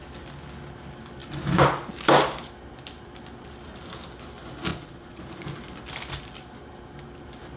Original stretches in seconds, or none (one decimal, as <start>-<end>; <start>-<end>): 0.0-4.7; 5.2-7.6